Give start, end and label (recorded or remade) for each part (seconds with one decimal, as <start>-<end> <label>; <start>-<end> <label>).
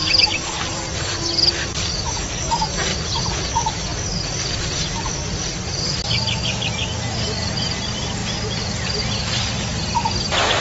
0.0-1.8 remade; 1.8-2.9 recorded; 2.9-3.5 remade; 3.5-8.2 recorded; 8.2-9.0 remade; 9.0-10.6 recorded